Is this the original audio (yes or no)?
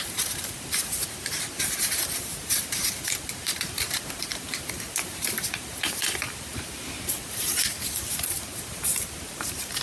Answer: no